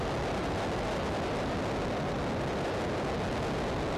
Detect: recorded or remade recorded